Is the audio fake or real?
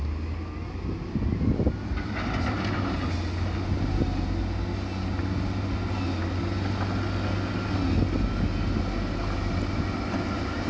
real